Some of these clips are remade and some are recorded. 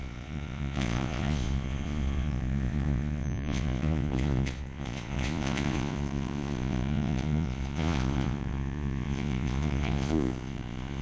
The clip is remade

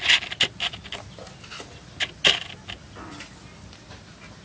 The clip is recorded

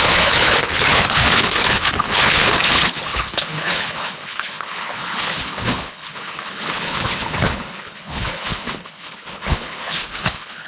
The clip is remade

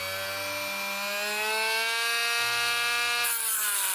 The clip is recorded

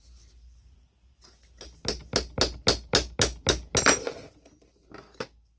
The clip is recorded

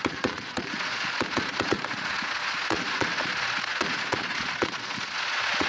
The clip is remade